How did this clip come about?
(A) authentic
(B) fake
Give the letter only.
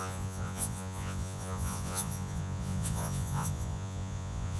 B